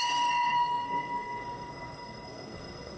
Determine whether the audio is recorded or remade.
remade